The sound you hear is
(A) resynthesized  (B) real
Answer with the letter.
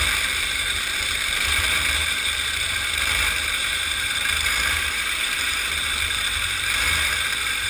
A